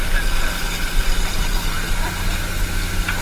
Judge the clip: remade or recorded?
recorded